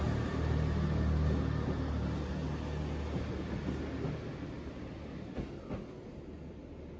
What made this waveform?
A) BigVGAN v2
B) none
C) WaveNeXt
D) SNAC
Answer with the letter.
B